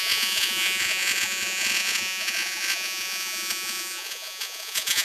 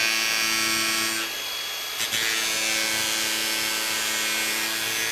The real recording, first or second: second